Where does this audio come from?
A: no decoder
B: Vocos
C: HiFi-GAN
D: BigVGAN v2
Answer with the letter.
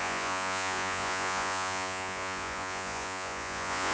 B